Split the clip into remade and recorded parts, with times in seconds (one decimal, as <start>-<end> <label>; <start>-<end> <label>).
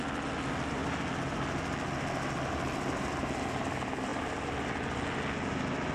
0.0-5.9 recorded